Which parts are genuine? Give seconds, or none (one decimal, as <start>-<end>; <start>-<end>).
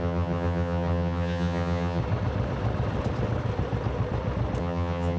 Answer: 2.0-4.6